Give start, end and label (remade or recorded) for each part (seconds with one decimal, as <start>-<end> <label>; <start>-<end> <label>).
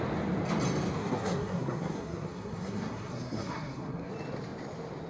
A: 0.0-1.0 recorded; 1.0-4.1 remade; 4.1-5.1 recorded